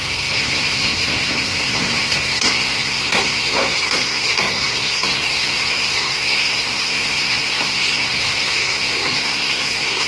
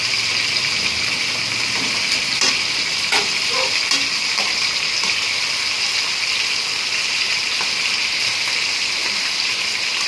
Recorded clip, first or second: second